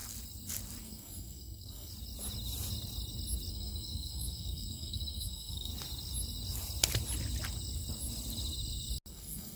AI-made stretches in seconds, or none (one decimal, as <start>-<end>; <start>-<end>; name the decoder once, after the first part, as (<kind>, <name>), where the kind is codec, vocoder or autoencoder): 0.8-1.9 (codec, SNAC); 3.5-5.7; 9.1-9.6